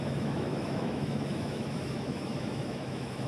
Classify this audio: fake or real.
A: fake